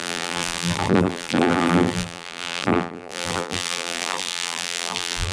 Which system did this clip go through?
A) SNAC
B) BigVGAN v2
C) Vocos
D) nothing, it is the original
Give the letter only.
B